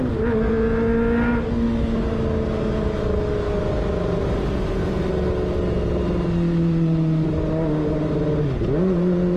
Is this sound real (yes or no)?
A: yes